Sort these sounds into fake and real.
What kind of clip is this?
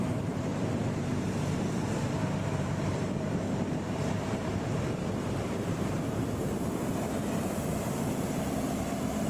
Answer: fake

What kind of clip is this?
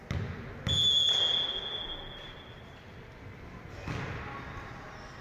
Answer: real